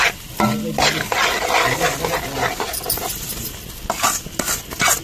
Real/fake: real